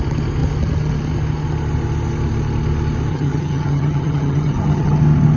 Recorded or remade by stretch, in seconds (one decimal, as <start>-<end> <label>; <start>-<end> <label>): 0.0-3.1 recorded; 3.1-5.0 remade; 5.0-5.4 recorded